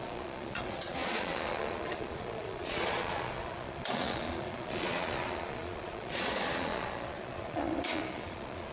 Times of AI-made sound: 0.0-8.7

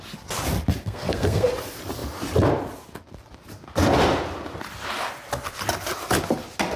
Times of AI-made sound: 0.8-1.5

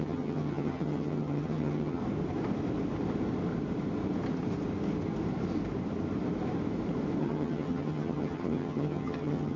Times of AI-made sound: 0.0-2.0; 7.2-9.6